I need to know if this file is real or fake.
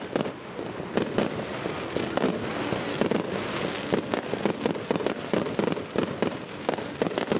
real